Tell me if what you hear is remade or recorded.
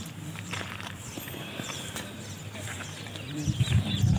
remade